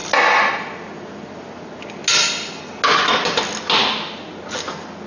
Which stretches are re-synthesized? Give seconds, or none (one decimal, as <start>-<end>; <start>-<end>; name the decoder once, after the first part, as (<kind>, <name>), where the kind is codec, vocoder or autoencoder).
none